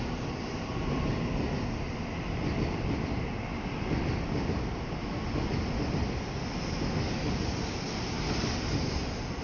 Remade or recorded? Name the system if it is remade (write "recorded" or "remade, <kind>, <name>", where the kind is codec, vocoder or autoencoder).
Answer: recorded